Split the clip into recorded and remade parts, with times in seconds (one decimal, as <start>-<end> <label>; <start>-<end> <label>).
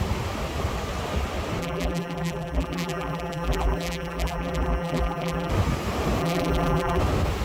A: 0.0-1.6 recorded; 1.6-5.5 remade; 5.5-6.2 recorded; 6.2-7.0 remade; 7.0-7.4 recorded